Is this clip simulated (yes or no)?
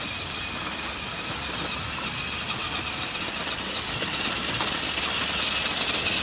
no